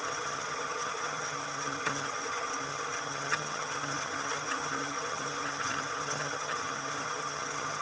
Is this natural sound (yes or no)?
no